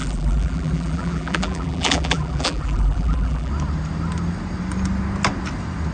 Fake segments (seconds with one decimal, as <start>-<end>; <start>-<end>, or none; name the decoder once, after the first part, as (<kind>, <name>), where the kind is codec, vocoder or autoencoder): 0.0-3.5 (vocoder, BigVGAN v2)